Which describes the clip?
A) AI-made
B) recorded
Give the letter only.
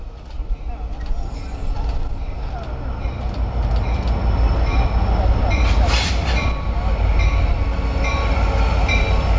B